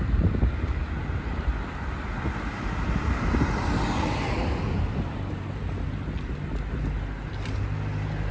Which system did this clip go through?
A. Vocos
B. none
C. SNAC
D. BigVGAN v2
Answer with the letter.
B